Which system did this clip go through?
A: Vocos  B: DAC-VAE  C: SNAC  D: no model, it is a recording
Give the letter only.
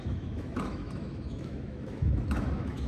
B